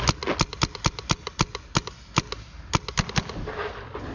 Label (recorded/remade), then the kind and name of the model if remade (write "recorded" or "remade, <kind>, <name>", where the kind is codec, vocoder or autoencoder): recorded